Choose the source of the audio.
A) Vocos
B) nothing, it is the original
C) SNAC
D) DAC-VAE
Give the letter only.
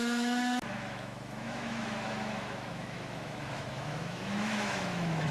D